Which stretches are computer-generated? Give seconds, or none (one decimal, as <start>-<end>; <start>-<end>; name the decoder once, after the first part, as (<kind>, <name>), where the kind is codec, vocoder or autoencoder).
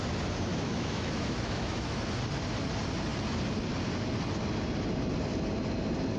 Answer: 0.5-2.0 (autoencoder, DAC-VAE)